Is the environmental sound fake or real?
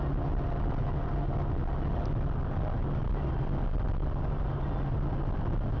real